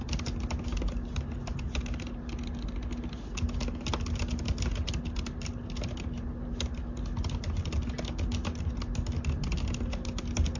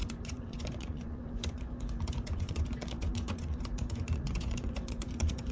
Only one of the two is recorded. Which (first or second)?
first